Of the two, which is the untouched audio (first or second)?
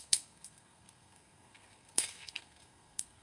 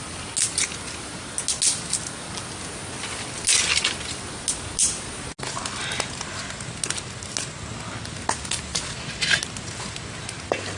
second